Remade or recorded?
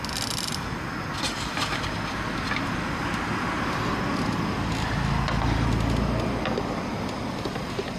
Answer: recorded